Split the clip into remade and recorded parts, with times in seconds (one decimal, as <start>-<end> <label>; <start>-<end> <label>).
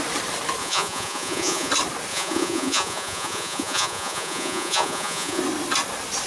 0.0-0.6 recorded; 0.6-1.7 remade; 1.7-2.1 recorded; 2.1-5.4 remade; 5.4-6.3 recorded